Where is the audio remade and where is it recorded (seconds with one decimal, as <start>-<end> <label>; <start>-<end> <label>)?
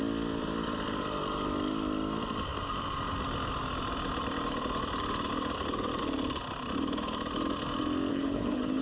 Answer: 0.0-8.1 recorded; 8.1-8.8 remade